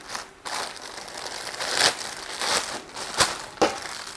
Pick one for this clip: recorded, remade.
recorded